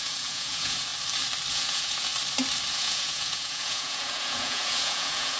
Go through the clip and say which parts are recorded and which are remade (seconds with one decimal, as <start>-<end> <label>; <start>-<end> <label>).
0.0-0.9 remade; 0.9-1.5 recorded; 1.5-2.1 remade; 2.1-2.7 recorded; 2.7-5.4 remade